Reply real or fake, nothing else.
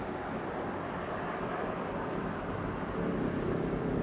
real